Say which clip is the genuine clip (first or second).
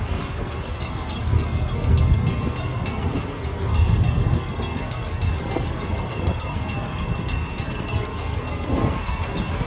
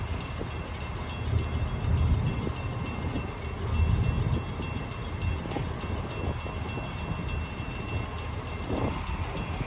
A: second